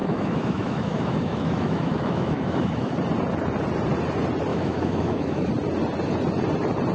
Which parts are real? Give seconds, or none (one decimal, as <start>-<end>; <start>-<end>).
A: 2.9-4.5; 5.5-6.9